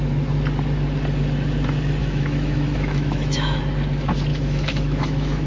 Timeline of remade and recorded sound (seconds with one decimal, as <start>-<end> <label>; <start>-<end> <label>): 0.0-2.0 recorded; 2.0-3.6 remade; 3.6-4.3 recorded; 4.3-5.5 remade